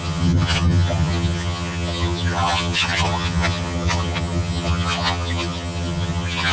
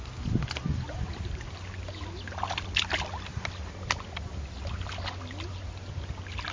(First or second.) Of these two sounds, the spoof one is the first